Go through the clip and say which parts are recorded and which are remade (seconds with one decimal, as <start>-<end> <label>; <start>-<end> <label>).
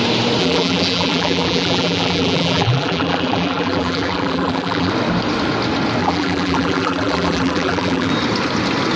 0.0-0.4 recorded; 0.4-4.9 remade; 4.9-6.0 recorded; 6.0-8.1 remade; 8.1-9.0 recorded